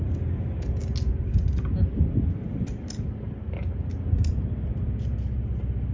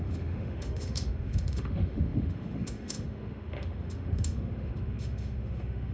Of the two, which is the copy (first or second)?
second